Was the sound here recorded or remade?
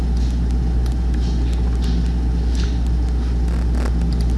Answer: recorded